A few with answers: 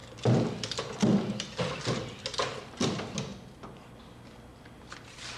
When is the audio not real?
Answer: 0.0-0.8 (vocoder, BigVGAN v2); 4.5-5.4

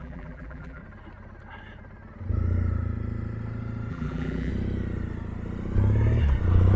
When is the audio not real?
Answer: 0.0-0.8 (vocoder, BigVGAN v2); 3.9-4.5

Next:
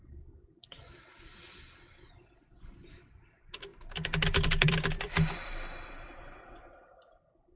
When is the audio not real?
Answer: 0.0-7.6 (vocoder, BigVGAN v2)

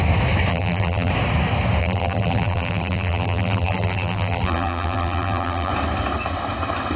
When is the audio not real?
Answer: 0.5-1.1 (vocoder, BigVGAN v2); 1.8-5.7

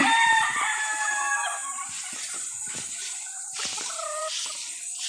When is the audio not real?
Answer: 0.0-1.6 (vocoder, BigVGAN v2); 3.1-4.3